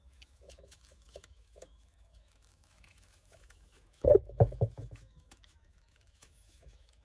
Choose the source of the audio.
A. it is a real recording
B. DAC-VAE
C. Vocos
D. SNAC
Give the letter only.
B